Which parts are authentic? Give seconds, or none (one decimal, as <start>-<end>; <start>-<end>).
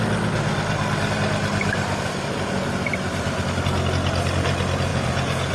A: 0.0-4.9